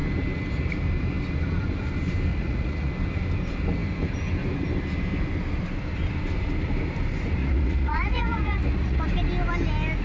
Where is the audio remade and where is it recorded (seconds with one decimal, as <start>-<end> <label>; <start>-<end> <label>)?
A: 0.0-2.3 recorded; 2.3-2.9 remade; 2.9-7.4 recorded; 7.4-9.1 remade; 9.1-10.0 recorded